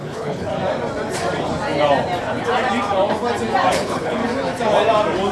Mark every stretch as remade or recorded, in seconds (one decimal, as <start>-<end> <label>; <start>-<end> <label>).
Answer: 0.0-0.5 remade; 0.5-3.7 recorded; 3.7-4.2 remade; 4.2-5.3 recorded